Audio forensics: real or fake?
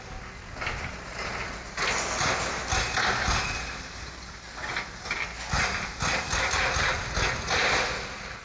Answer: real